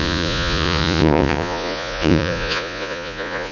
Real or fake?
fake